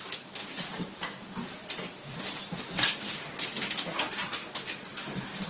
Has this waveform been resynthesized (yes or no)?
no